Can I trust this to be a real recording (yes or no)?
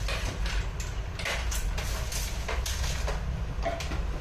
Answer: yes